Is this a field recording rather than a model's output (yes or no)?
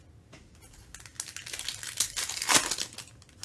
yes